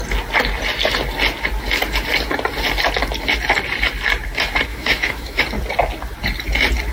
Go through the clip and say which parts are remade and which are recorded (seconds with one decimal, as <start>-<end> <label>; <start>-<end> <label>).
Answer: 0.0-4.7 recorded; 4.7-5.4 remade; 5.4-6.9 recorded

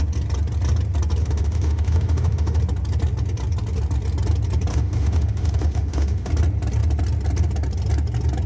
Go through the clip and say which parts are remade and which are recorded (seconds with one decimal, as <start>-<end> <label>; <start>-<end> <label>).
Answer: 0.0-1.2 recorded; 1.2-2.6 remade; 2.6-4.7 recorded; 4.7-6.3 remade; 6.3-8.5 recorded

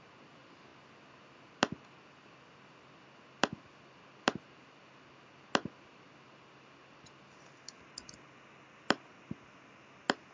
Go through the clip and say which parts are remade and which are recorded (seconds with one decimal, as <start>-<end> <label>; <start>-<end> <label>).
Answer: 0.0-10.3 recorded

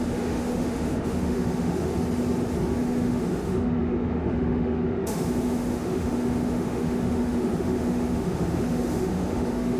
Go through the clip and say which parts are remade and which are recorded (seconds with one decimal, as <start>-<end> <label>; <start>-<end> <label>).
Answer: 0.0-1.9 remade; 1.9-2.6 recorded; 2.6-9.8 remade

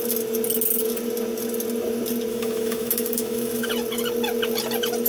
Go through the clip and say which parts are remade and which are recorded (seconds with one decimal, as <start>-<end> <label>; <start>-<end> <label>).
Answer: 0.0-2.3 recorded; 2.3-3.7 remade; 3.7-5.1 recorded

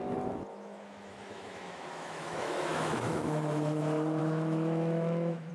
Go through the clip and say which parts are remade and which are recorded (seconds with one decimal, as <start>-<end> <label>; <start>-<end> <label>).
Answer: 0.0-0.5 recorded; 0.5-3.8 remade; 3.8-4.2 recorded; 4.2-5.5 remade

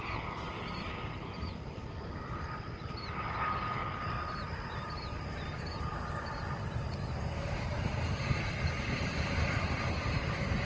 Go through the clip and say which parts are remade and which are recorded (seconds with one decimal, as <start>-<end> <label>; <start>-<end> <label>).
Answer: 0.0-10.6 recorded

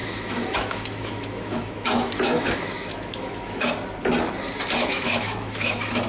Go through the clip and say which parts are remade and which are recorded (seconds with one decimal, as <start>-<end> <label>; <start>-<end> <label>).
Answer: 0.0-3.7 remade; 3.7-4.8 recorded; 4.8-6.1 remade